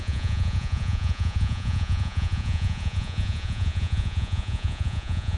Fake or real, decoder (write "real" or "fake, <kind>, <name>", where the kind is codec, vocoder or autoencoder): fake, vocoder, Vocos